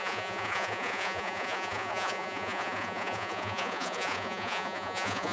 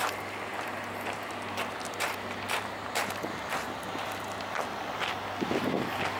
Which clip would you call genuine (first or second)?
second